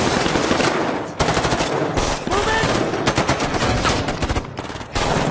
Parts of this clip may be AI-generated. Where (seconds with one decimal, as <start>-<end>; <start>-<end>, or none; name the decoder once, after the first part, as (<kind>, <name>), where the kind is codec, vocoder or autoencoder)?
none